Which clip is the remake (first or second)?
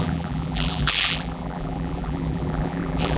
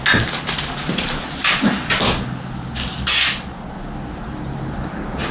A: first